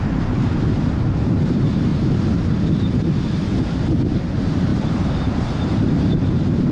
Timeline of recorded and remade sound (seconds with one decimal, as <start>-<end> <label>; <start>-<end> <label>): 0.0-6.7 remade